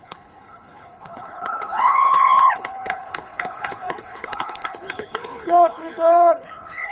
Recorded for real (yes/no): no